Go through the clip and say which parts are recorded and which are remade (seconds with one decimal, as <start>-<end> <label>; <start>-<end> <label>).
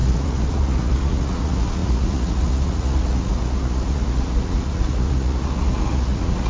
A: 0.0-6.5 remade